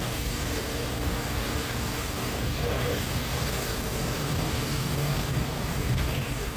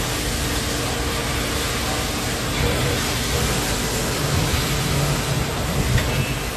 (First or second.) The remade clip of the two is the first